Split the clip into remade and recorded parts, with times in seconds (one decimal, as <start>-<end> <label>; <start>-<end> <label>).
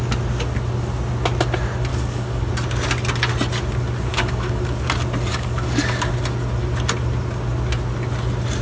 0.0-1.9 recorded; 1.9-2.5 remade; 2.5-4.1 recorded; 4.1-4.6 remade; 4.6-5.3 recorded; 5.3-6.1 remade; 6.1-8.6 recorded